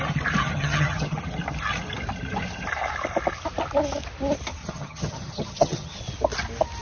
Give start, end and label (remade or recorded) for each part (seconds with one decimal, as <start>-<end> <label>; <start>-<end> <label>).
0.0-0.4 recorded; 0.4-1.2 remade; 1.2-4.6 recorded; 4.6-6.0 remade; 6.0-6.8 recorded